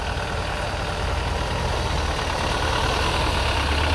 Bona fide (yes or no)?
yes